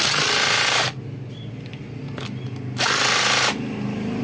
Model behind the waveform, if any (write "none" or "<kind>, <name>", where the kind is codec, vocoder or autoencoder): none